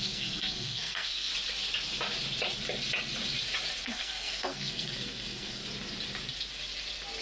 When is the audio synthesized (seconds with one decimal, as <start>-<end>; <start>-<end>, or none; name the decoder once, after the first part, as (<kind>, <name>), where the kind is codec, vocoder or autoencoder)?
0.0-1.3 (codec, SNAC); 3.8-5.6